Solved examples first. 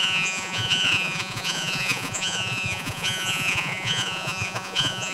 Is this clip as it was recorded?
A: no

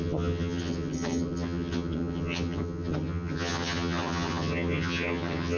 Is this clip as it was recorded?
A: no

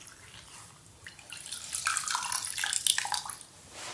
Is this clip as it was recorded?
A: yes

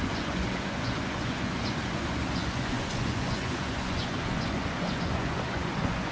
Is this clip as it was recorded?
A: no